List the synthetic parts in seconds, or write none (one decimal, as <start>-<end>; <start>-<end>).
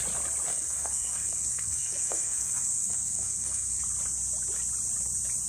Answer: 0.5-3.8